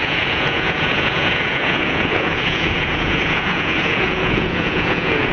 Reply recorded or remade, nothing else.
remade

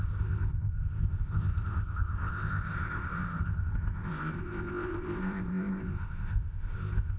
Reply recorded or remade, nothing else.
remade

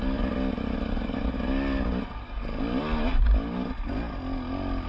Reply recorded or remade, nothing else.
recorded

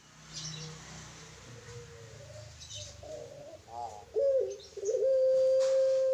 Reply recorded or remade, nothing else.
recorded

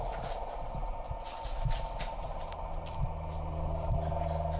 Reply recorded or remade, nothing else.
recorded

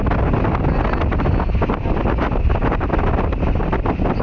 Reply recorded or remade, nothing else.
recorded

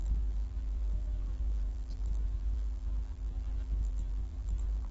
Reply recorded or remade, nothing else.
remade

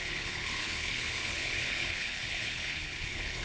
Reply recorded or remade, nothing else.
remade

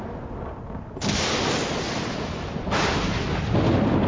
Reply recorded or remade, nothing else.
recorded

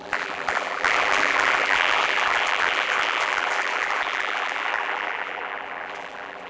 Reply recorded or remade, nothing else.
remade